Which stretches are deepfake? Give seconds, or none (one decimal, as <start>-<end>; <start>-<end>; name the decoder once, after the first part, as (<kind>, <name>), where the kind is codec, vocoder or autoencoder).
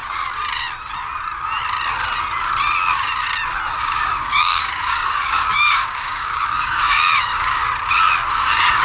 3.8-7.6 (codec, DAC); 8.3-8.8